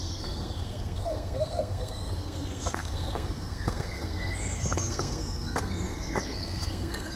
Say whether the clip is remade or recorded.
remade